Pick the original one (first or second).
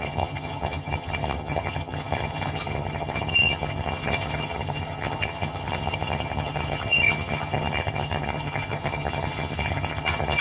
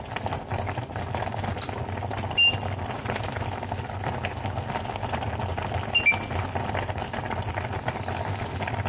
second